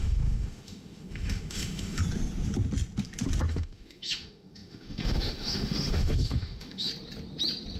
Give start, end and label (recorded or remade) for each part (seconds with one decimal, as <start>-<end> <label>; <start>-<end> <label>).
0.0-2.0 remade; 2.0-3.5 recorded; 3.5-6.9 remade; 6.9-7.8 recorded